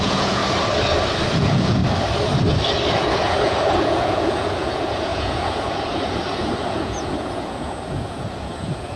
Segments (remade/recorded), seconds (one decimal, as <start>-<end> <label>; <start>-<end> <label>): 0.0-0.4 remade; 0.4-1.3 recorded; 1.3-1.8 remade; 1.8-2.9 recorded; 2.9-9.0 remade

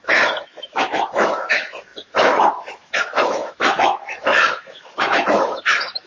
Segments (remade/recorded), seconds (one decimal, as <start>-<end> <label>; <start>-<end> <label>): 0.0-6.1 remade

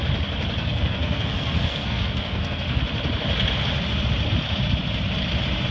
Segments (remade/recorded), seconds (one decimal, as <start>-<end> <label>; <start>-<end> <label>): 0.0-0.6 recorded; 0.6-2.8 remade; 2.8-5.7 recorded

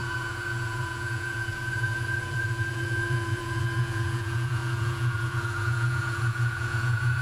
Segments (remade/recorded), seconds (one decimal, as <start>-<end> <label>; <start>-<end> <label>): 0.0-7.2 remade

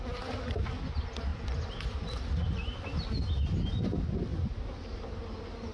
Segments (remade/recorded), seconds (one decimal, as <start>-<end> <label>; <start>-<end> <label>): 0.0-5.7 recorded